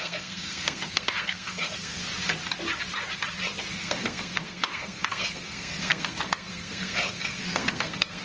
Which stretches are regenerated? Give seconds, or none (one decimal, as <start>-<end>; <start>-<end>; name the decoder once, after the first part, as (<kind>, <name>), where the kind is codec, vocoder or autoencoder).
0.0-2.0 (codec, SNAC); 3.7-8.2